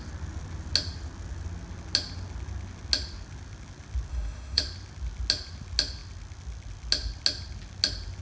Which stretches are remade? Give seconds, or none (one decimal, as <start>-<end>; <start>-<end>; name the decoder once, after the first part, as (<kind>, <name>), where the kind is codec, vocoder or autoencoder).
4.1-4.6 (autoencoder, DAC-VAE)